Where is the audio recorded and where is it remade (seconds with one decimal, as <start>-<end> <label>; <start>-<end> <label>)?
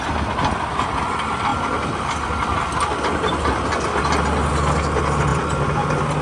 0.0-6.2 recorded